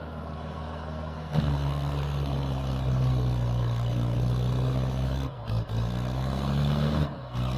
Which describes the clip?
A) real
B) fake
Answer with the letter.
B